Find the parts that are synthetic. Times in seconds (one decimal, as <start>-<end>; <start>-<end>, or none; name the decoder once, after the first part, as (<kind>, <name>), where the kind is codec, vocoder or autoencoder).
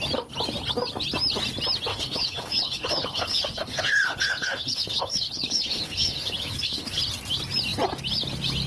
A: 1.9-7.0 (codec, HILCodec)